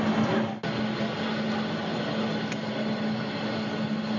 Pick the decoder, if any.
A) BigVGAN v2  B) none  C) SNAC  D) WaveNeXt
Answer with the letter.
B